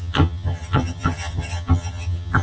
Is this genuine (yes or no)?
no